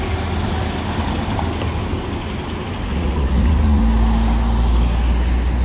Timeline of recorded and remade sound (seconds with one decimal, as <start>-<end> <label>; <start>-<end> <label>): 0.0-2.9 recorded; 2.9-3.8 remade; 3.8-5.6 recorded

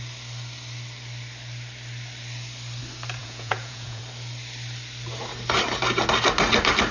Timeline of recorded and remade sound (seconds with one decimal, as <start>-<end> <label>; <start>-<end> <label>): 0.0-3.2 recorded; 3.2-4.0 remade; 4.0-6.9 recorded

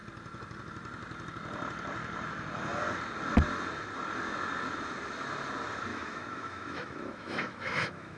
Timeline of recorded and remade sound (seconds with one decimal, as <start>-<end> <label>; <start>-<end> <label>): 0.0-5.9 recorded; 5.9-8.2 remade

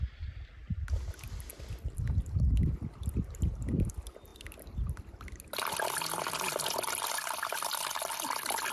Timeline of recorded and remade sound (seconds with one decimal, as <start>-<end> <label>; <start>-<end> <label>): 0.0-8.7 recorded

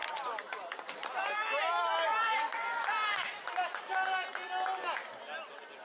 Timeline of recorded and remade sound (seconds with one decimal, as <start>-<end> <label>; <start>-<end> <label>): 0.0-3.5 remade; 3.5-5.8 recorded

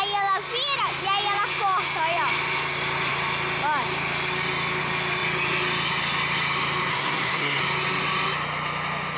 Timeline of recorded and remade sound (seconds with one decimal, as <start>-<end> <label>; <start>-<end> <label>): 0.0-6.9 recorded; 6.9-7.6 remade; 7.6-9.2 recorded

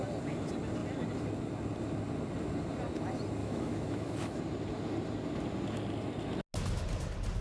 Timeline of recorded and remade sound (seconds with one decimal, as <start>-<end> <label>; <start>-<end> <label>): 0.0-3.4 recorded; 3.4-4.4 remade; 4.4-7.4 recorded

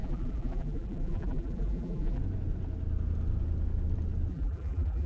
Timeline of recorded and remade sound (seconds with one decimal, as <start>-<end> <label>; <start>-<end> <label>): 0.0-2.2 remade; 2.2-4.3 recorded; 4.3-5.1 remade